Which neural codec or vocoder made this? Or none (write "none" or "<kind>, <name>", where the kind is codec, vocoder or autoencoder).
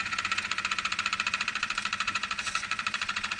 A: vocoder, Vocos